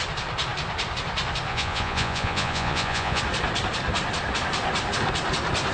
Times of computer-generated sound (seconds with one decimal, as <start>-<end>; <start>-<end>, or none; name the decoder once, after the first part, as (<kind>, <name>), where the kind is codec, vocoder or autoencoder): 1.5-3.2 (vocoder, Vocos)